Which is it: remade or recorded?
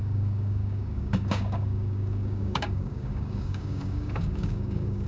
remade